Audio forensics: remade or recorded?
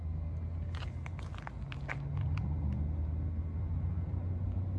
recorded